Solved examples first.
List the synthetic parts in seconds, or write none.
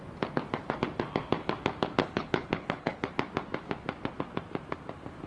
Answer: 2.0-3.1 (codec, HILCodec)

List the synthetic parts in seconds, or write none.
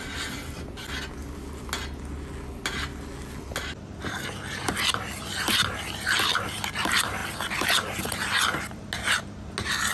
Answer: none